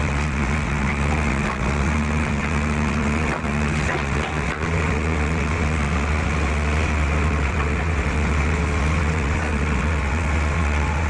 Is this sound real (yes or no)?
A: no